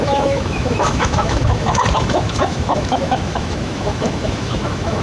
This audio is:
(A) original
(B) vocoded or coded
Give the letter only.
B